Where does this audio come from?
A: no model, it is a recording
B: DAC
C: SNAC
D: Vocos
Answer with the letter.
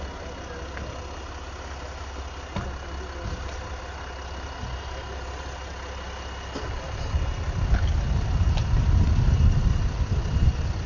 A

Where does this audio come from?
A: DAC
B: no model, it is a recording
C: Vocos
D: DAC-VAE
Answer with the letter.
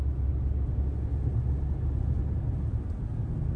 B